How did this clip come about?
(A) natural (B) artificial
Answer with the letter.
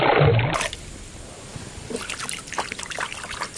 A